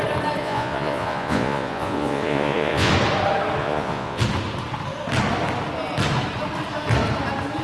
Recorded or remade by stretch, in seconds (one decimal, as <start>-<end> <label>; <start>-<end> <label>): 0.0-0.4 recorded; 0.4-2.9 remade; 2.9-3.6 recorded; 3.6-4.2 remade; 4.2-7.6 recorded